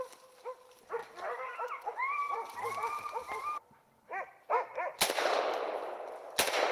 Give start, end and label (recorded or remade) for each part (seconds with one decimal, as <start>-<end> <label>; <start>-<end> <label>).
0.0-6.7 remade